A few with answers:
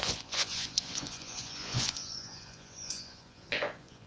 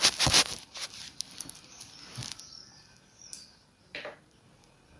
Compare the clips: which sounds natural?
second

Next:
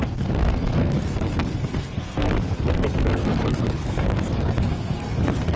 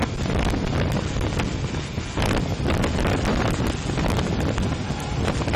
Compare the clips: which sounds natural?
second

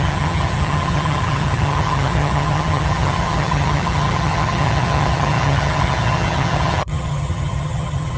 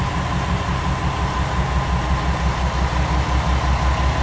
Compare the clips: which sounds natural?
second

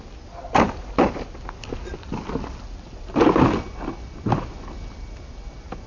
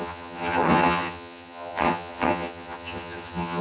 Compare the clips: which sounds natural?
first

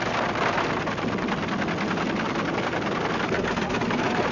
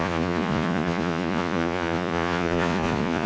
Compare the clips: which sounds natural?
first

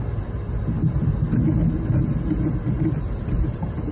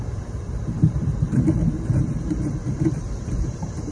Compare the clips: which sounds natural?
first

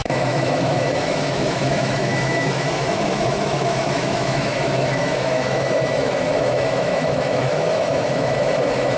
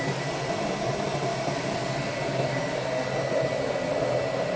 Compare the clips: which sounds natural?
second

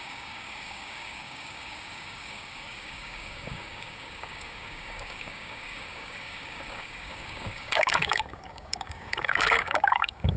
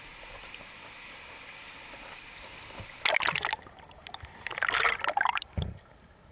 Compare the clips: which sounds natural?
second